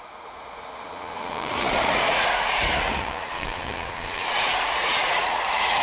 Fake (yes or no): yes